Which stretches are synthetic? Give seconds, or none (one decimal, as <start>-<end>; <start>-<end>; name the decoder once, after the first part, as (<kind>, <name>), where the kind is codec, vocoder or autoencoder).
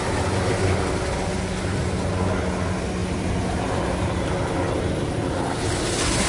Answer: none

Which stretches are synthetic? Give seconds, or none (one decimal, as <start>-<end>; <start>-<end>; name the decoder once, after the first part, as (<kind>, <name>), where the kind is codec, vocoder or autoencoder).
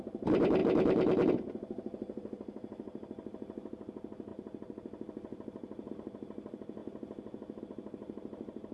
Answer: 0.0-6.8 (vocoder, BigVGAN v2); 7.6-8.7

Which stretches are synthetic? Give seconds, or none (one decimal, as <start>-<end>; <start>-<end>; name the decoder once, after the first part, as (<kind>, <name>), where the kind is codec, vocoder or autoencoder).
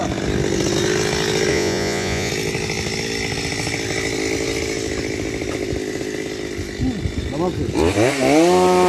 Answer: 1.5-2.3 (vocoder, Vocos)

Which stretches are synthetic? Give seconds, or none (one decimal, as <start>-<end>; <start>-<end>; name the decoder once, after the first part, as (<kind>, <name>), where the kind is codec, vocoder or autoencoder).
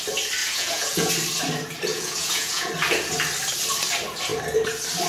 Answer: 0.4-1.1 (vocoder, Vocos); 1.9-2.7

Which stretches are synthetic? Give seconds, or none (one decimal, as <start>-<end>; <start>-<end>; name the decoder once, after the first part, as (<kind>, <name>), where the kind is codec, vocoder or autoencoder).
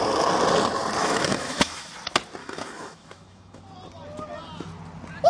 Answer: 1.0-1.9 (autoencoder, DAC-VAE); 2.4-3.6